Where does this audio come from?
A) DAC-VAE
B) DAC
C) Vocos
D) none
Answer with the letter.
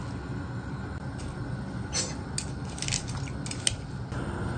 D